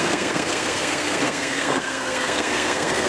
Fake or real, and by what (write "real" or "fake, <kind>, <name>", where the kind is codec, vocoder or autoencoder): fake, codec, SNAC